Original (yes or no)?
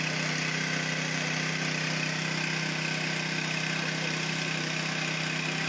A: yes